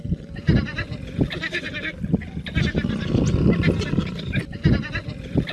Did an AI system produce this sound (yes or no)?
no